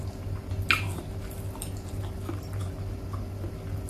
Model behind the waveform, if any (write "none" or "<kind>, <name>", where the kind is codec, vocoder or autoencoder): none